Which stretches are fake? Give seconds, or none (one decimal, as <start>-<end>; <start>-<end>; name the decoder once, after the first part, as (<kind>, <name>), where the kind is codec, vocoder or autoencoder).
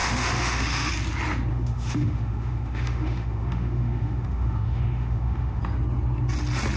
0.0-0.9 (autoencoder, DAC-VAE); 1.5-5.6